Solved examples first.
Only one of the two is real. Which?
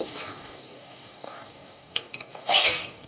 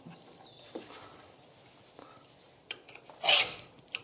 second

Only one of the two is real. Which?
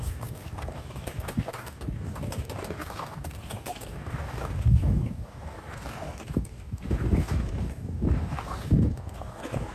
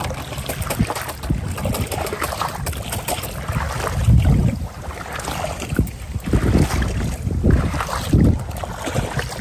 second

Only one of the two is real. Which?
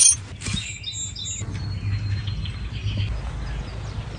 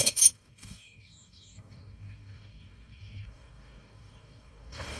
first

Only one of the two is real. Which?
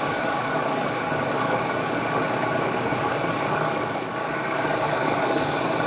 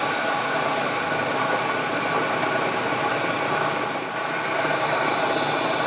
second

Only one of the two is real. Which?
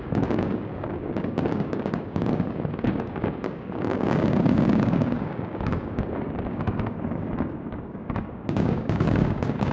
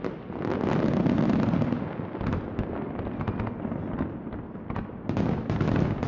second